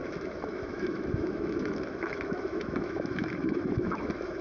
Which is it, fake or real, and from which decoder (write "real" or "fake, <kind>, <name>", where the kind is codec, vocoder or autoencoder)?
fake, autoencoder, DAC-VAE